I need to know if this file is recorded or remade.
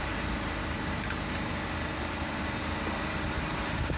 remade